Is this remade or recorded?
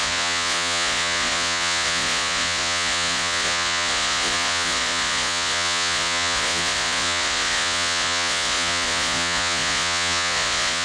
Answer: remade